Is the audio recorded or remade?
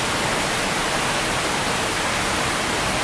recorded